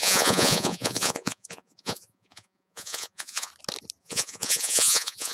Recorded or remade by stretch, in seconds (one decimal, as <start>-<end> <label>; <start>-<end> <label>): 0.0-3.5 remade; 3.5-4.0 recorded; 4.0-5.3 remade